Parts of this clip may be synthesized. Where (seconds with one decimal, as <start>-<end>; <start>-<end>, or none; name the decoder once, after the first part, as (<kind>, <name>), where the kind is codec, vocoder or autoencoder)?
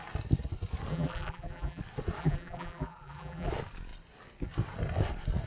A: 0.9-1.8 (vocoder, BigVGAN v2); 2.2-3.5